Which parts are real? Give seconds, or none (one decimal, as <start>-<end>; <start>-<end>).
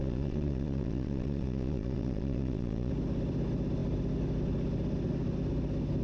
2.9-6.0